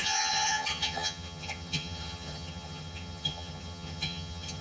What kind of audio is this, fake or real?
fake